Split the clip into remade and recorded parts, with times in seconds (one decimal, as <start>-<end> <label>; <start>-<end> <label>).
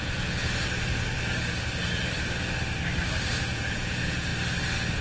0.0-0.4 remade; 0.4-3.4 recorded; 3.4-4.3 remade; 4.3-5.0 recorded